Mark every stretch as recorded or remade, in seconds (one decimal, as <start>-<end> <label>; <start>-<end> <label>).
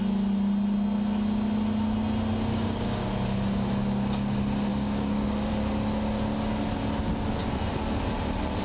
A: 0.0-2.5 recorded; 2.5-3.1 remade; 3.1-4.7 recorded; 4.7-5.5 remade; 5.5-8.6 recorded